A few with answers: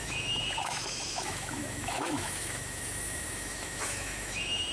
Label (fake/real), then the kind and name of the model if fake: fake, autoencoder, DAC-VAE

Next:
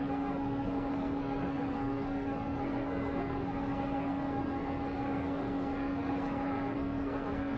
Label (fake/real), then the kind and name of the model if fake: fake, codec, SNAC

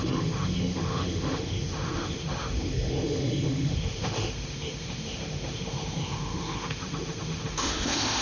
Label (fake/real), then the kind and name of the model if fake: fake, autoencoder, DAC-VAE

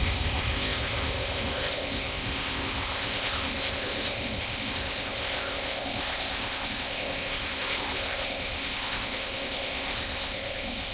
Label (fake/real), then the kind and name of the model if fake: fake, codec, ZipCodec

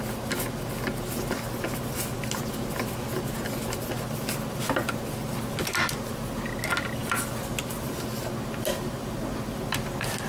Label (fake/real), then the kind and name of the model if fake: real